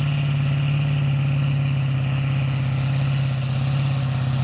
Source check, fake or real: real